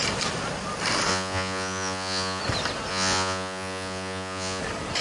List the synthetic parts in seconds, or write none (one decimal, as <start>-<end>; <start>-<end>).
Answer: 1.1-2.4; 2.9-4.6